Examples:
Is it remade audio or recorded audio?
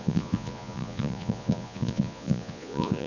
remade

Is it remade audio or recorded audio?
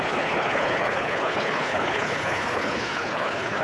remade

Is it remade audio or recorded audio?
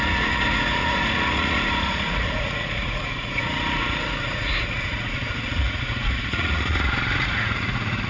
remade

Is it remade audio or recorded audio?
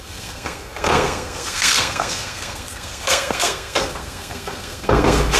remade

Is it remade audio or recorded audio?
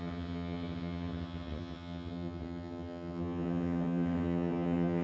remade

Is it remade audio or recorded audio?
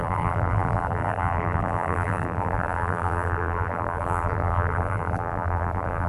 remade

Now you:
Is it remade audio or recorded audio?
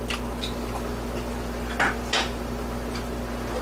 recorded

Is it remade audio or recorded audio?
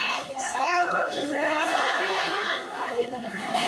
remade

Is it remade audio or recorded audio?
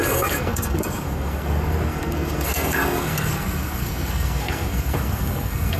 remade